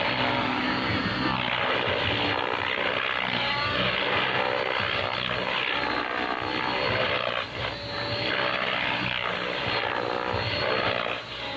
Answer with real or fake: real